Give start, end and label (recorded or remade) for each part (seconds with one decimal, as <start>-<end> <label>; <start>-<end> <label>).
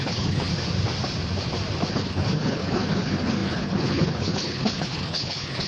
0.0-0.5 remade; 0.5-1.9 recorded; 1.9-5.7 remade